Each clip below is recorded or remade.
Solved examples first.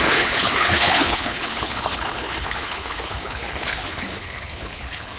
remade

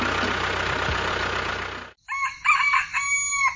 recorded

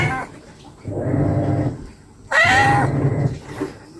recorded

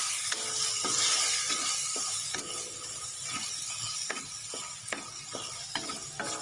recorded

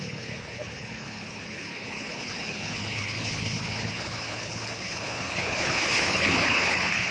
remade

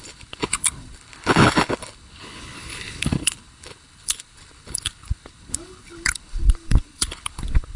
remade